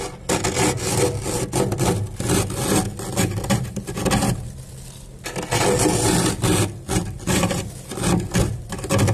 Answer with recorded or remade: recorded